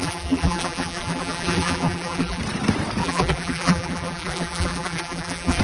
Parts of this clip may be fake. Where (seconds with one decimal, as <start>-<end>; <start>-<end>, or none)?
0.0-2.4; 3.0-5.6